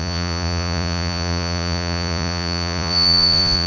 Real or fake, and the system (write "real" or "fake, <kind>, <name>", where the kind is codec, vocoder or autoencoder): fake, vocoder, Vocos